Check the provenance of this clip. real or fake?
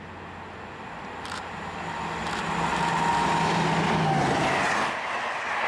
real